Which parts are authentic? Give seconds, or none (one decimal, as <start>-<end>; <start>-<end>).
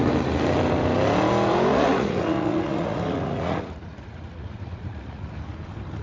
0.0-1.7; 5.3-6.0